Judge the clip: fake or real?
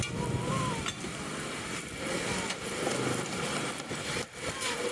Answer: real